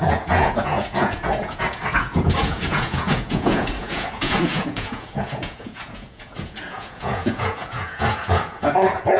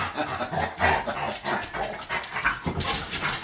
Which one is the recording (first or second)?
second